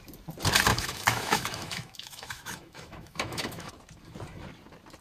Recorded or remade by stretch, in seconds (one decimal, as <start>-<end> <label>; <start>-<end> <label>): 0.0-0.7 recorded; 0.7-3.7 remade; 3.7-5.0 recorded

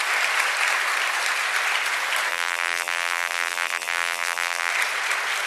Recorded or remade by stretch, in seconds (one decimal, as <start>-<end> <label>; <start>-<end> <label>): 0.0-2.3 recorded; 2.3-4.7 remade; 4.7-5.5 recorded